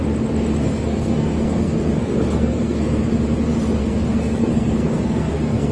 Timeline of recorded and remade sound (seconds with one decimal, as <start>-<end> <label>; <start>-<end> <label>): 0.0-0.6 recorded; 0.6-3.0 remade; 3.0-3.8 recorded; 3.8-5.7 remade